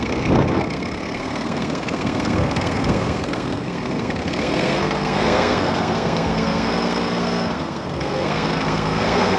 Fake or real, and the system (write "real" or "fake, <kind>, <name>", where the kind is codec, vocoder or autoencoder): fake, codec, SNAC